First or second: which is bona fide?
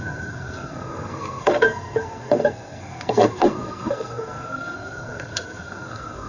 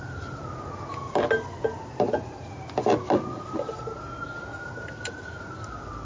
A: second